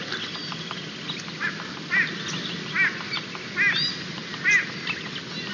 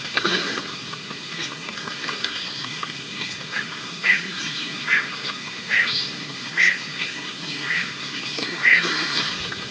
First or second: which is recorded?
first